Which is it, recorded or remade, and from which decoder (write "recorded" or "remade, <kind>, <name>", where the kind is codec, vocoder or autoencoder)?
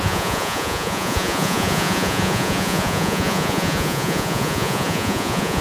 remade, vocoder, Vocos